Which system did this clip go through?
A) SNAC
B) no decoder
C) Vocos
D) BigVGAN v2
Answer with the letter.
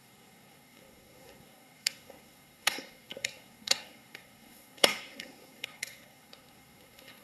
A